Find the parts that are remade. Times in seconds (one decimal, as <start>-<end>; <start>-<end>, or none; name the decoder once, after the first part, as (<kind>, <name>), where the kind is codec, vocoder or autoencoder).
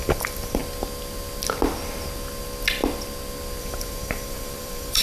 0.0-0.6 (vocoder, BigVGAN v2); 3.6-5.0